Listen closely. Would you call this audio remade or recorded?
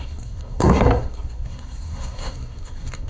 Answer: remade